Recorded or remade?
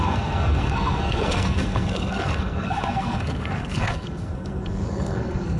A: remade